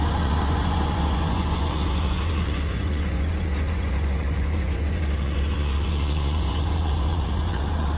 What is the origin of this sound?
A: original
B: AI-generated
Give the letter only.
B